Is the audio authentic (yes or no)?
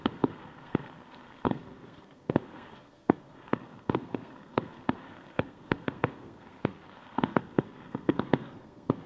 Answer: no